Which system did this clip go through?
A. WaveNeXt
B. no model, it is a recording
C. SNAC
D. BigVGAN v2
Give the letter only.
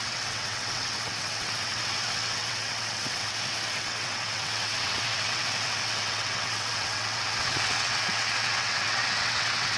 A